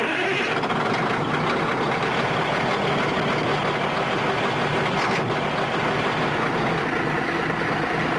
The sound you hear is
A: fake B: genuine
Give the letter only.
B